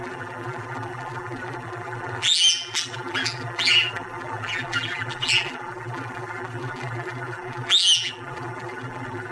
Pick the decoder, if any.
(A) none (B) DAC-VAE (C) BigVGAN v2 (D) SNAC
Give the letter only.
C